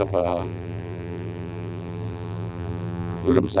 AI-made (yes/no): yes